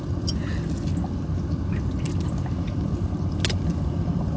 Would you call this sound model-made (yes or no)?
no